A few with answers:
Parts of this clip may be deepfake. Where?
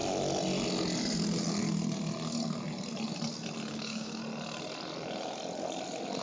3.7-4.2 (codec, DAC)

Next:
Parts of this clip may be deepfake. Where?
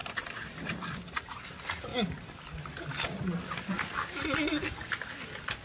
0.0-1.1 (vocoder, BigVGAN v2)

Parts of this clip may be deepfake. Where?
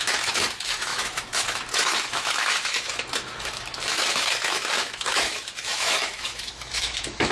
0.0-7.3 (autoencoder, DAC-VAE)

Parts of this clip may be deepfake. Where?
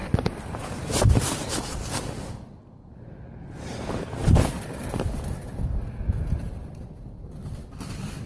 0.0-4.2 (vocoder, BigVGAN v2); 6.2-8.3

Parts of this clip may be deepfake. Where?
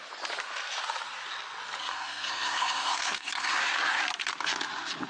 1.8-4.0 (codec, SNAC)